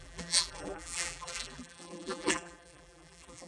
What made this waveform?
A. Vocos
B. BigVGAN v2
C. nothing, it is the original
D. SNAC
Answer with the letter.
B